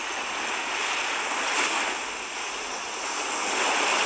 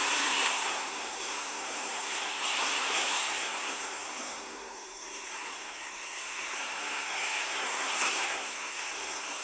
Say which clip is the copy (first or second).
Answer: second